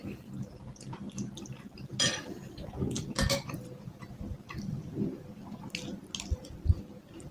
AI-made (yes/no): no